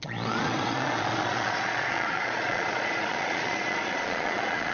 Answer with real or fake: fake